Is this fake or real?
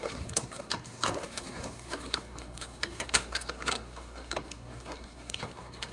fake